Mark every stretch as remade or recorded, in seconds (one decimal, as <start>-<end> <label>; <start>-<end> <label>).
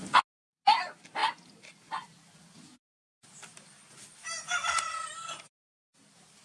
0.0-6.4 recorded